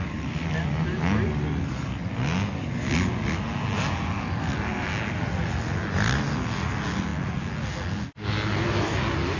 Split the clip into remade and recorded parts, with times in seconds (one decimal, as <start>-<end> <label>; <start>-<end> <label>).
0.0-9.4 recorded